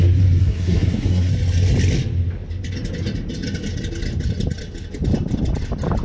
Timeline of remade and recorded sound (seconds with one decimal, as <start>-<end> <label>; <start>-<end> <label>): 0.0-0.4 recorded; 0.4-1.3 remade; 1.3-6.0 recorded